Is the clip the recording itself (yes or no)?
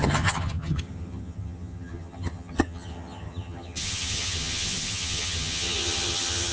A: no